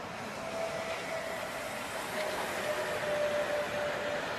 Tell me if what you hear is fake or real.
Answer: real